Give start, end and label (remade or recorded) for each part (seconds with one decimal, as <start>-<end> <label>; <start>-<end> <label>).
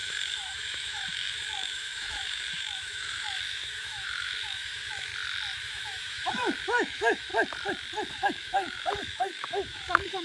0.0-5.1 remade; 5.1-5.6 recorded; 5.6-7.3 remade; 7.3-8.1 recorded; 8.1-10.2 remade